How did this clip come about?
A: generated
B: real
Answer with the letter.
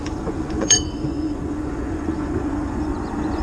A